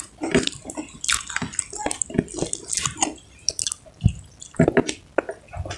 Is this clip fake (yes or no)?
no